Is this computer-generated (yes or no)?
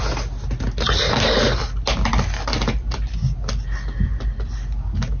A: no